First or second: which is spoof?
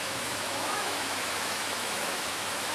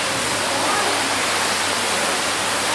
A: first